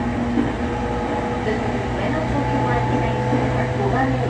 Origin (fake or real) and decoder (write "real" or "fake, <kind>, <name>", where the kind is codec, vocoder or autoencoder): real